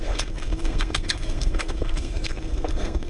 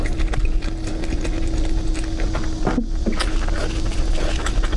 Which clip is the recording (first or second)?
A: second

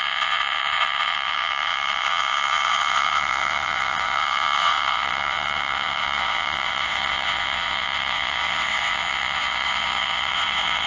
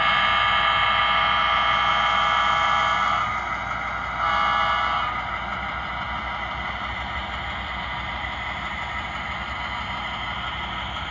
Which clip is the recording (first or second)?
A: second